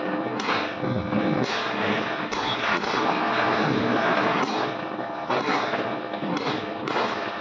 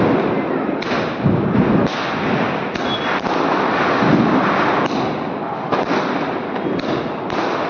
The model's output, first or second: first